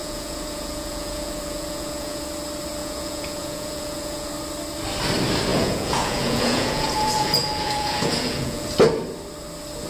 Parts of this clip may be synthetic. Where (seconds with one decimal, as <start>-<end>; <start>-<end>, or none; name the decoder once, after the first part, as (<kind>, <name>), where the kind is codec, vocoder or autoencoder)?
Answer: 0.0-2.2 (vocoder, Vocos); 2.8-4.3; 5.5-8.7